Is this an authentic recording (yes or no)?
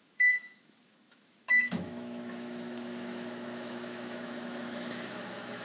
no